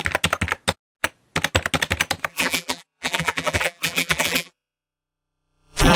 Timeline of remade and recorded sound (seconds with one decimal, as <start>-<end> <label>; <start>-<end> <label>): 0.0-2.3 recorded; 2.3-6.0 remade